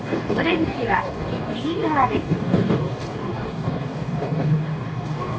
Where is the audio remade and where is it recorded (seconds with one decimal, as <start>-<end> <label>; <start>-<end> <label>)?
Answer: 0.0-5.4 remade